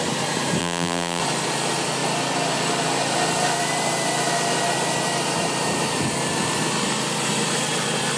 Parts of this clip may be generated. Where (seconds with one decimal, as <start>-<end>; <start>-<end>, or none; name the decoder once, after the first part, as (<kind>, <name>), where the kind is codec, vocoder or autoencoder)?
0.6-1.2 (vocoder, BigVGAN v2)